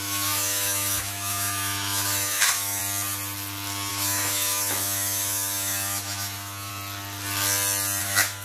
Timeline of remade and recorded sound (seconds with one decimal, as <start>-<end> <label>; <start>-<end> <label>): 0.0-2.8 remade; 2.8-3.9 recorded; 3.9-6.7 remade; 6.7-8.0 recorded; 8.0-8.4 remade